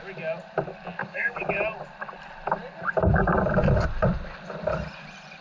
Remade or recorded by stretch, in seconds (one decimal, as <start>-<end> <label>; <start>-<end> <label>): 0.0-1.0 recorded; 1.0-1.5 remade; 1.5-5.4 recorded